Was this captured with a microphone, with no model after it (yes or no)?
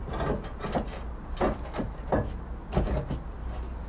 yes